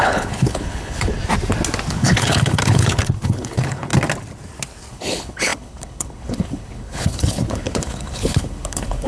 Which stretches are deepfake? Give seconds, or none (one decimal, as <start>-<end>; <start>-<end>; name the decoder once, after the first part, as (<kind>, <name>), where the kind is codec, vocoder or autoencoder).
0.0-1.1 (codec, HILCodec); 1.9-3.9; 4.9-9.1